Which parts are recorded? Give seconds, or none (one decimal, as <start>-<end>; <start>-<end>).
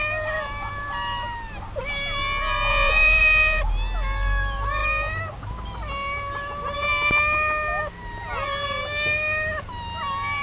0.0-2.7; 3.6-10.4